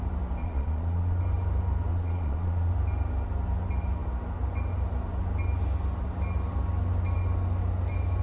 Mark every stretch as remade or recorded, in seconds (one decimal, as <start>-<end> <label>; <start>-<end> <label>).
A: 0.0-0.4 recorded; 0.4-1.2 remade; 1.2-1.9 recorded; 1.9-2.7 remade; 2.7-8.2 recorded